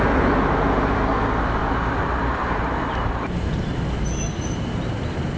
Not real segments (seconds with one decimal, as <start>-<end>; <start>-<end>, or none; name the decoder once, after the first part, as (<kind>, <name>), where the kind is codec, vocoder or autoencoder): 1.6-3.8 (vocoder, BigVGAN v2)